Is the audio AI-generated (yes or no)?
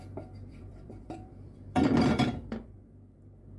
yes